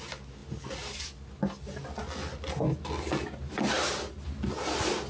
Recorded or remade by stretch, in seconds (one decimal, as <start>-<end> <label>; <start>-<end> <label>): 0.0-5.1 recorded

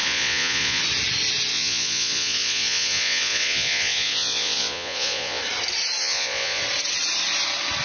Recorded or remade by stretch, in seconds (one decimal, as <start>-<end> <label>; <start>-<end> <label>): 0.0-0.8 remade; 0.8-1.5 recorded; 1.5-5.4 remade; 5.4-6.0 recorded; 6.0-6.6 remade; 6.6-7.8 recorded

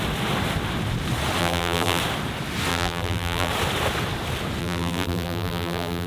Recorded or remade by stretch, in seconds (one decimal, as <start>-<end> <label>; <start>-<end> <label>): 0.0-1.4 recorded; 1.4-2.0 remade; 2.0-2.7 recorded; 2.7-3.5 remade; 3.5-4.6 recorded; 4.6-6.1 remade

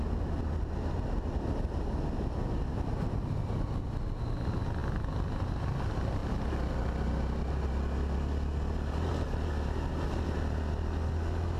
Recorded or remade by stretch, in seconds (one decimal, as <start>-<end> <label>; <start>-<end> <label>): 0.0-11.6 recorded

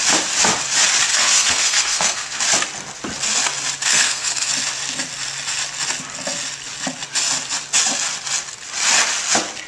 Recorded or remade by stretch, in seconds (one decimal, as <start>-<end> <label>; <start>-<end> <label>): 0.0-1.1 recorded; 1.1-2.4 remade; 2.4-3.9 recorded; 3.9-4.5 remade; 4.5-9.7 recorded

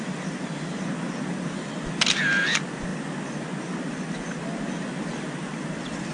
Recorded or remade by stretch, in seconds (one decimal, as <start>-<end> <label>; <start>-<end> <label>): 0.0-6.1 recorded